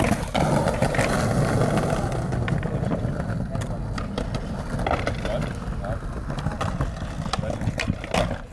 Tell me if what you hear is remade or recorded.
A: recorded